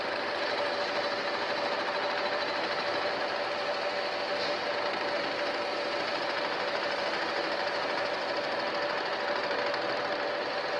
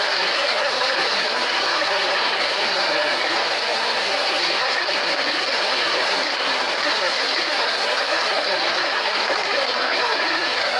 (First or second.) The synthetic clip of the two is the second